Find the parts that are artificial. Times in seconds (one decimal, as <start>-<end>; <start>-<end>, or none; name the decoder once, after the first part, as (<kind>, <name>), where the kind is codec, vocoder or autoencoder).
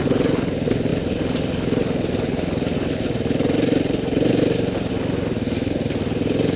none